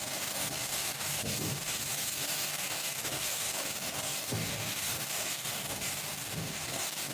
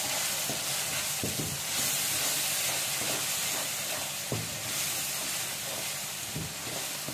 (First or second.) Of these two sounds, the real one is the second